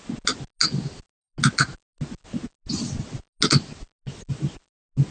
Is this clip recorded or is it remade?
recorded